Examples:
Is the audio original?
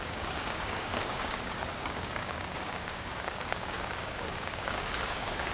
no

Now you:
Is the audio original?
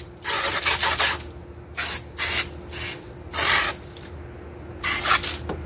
yes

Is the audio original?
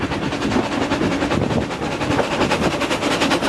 yes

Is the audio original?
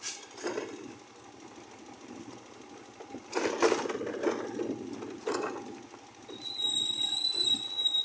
yes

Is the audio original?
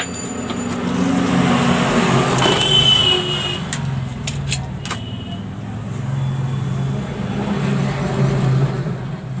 yes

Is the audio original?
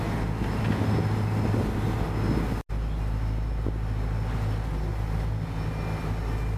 yes